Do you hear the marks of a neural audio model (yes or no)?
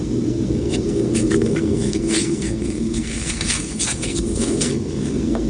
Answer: yes